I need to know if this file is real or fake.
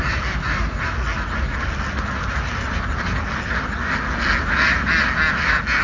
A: real